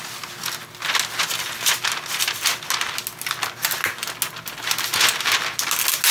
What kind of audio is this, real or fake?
real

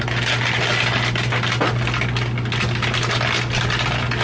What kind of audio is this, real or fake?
real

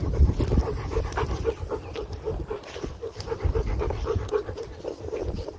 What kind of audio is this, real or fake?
fake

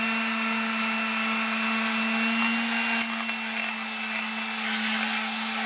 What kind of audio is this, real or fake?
real